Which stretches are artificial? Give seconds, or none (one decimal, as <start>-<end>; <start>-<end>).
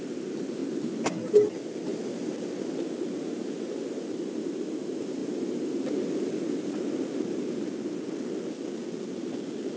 none